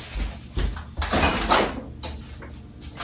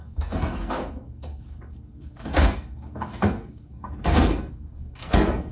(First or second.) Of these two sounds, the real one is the first